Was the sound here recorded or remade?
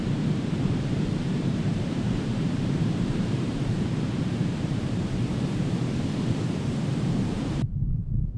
remade